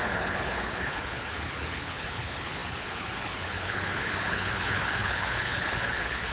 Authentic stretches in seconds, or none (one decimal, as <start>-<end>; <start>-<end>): none